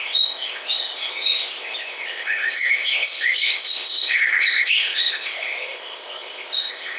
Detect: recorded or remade remade